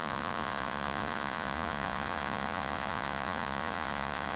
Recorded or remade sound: remade